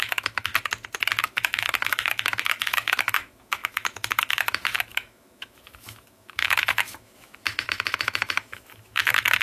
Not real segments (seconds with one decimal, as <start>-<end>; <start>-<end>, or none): 0.0-0.5; 1.2-9.4